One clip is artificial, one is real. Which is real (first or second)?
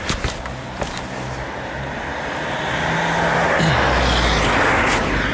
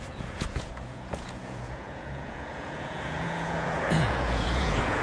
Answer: first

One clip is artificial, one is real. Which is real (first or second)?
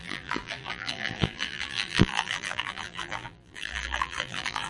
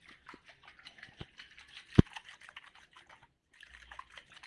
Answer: second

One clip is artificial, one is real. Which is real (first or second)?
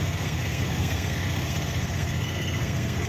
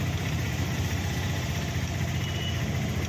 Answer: second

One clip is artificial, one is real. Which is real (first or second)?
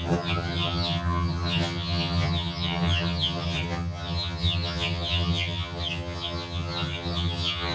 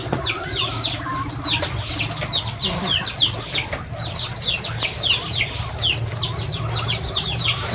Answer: second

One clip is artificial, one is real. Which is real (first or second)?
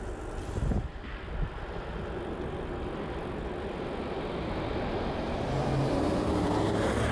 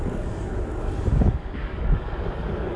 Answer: first